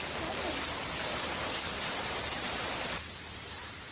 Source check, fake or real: real